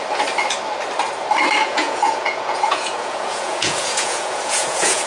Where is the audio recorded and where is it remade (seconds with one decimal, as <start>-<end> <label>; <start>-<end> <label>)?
0.0-1.6 recorded; 1.6-5.1 remade